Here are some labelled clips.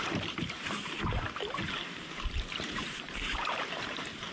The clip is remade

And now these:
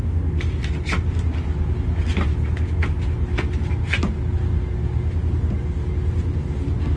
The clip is recorded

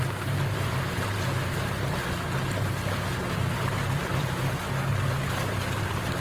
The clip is recorded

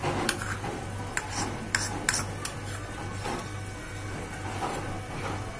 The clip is recorded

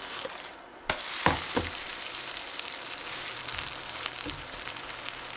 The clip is remade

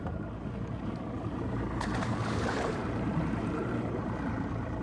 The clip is remade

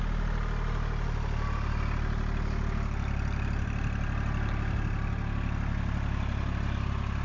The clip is recorded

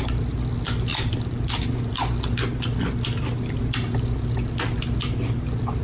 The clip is remade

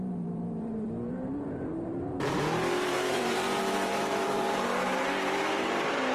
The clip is remade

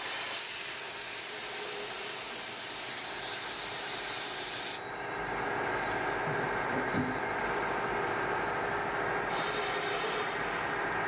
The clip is recorded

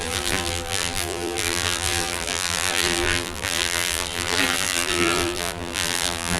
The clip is remade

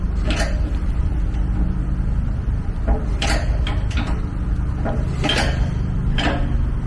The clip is recorded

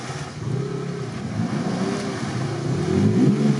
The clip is recorded